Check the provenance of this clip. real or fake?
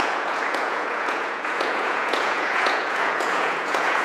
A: fake